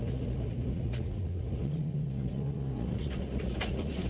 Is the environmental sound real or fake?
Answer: fake